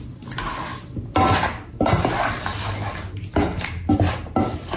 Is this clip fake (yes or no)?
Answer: no